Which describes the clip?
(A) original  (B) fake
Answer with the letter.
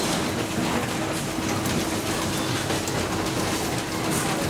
A